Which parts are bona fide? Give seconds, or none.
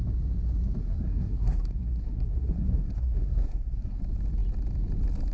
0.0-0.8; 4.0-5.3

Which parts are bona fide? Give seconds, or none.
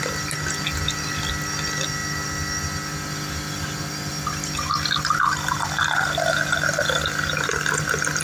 0.0-8.2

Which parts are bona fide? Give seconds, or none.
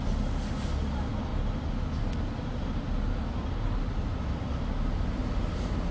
0.0-5.9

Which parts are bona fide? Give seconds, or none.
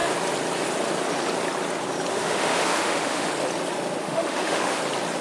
0.0-2.1; 3.3-4.0; 4.8-5.2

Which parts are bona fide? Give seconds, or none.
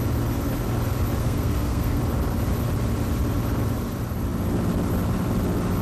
0.0-1.2; 2.0-5.8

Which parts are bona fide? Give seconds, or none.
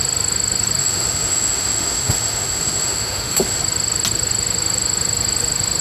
0.0-0.8; 3.6-5.8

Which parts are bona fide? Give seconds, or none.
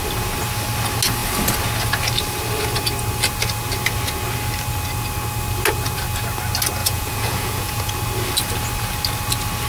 0.0-6.8; 7.9-9.7